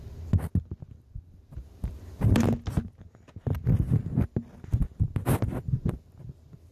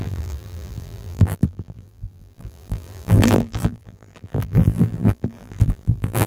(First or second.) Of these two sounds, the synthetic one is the second